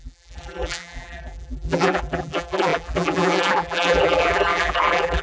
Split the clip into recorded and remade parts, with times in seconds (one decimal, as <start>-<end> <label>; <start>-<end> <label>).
0.0-5.2 remade